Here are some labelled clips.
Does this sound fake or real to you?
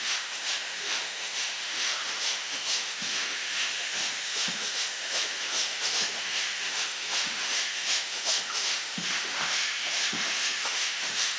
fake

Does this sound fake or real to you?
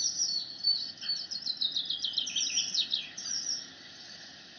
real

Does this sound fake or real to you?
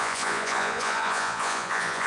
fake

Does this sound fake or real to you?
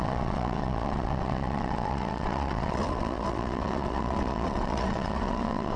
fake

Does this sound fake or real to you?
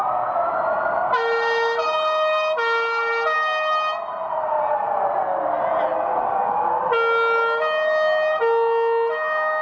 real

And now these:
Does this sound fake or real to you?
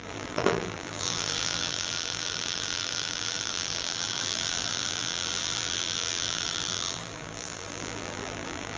fake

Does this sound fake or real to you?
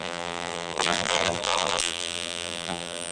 fake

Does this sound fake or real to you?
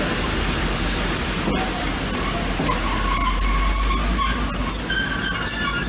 real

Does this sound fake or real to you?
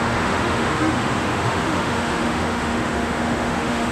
fake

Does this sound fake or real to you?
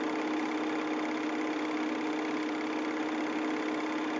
real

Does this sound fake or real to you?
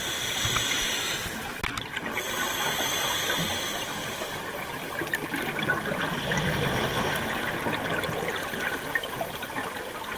real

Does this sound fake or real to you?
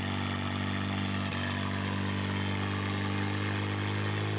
real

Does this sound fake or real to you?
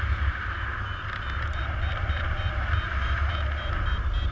real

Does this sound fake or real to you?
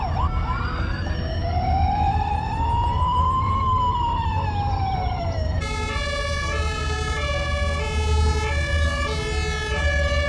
real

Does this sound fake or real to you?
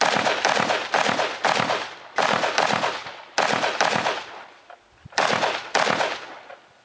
real